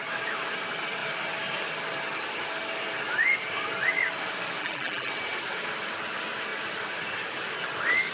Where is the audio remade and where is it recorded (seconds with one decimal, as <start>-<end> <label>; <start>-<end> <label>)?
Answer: 0.0-4.6 recorded; 4.6-5.1 remade; 5.1-8.1 recorded